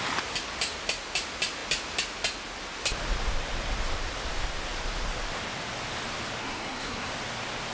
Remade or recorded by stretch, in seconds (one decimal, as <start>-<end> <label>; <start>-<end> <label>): 0.0-6.4 recorded; 6.4-7.1 remade; 7.1-7.7 recorded